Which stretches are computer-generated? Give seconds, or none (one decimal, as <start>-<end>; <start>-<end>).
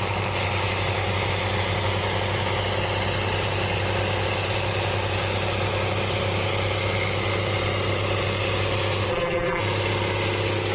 9.1-9.6